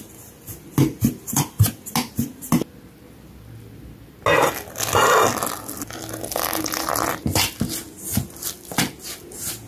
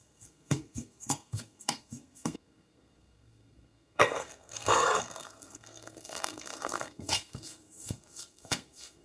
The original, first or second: first